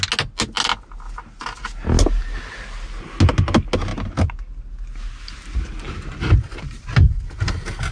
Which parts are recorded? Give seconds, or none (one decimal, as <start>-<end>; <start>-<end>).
0.0-7.9